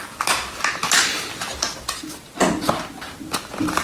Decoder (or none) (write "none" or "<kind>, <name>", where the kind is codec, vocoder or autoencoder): none